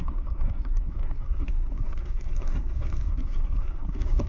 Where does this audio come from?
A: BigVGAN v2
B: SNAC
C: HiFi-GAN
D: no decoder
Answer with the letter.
B